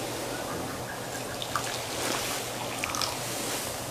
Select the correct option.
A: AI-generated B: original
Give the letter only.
B